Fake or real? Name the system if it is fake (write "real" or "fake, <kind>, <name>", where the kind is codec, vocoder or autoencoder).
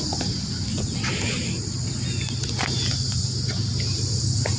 real